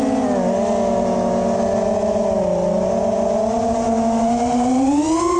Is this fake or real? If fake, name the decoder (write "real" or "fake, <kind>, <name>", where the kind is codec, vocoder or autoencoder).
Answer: real